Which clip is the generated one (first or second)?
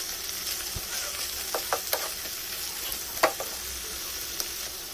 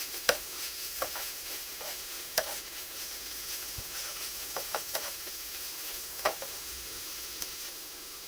second